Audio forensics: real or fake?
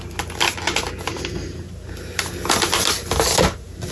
real